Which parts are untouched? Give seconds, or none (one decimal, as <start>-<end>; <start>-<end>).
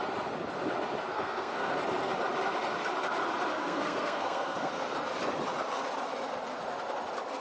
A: 0.0-1.1; 1.8-3.6; 4.7-7.4